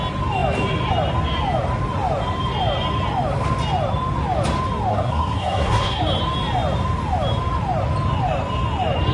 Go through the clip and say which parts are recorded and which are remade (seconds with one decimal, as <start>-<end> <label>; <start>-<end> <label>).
0.0-4.9 recorded; 4.9-6.0 remade; 6.0-9.1 recorded